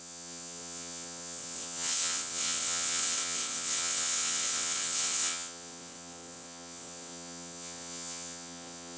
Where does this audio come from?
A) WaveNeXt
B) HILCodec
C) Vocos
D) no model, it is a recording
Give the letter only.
A